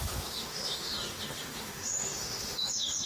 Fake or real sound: fake